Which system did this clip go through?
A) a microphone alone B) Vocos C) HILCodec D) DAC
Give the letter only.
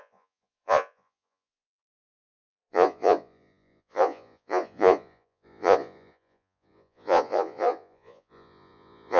B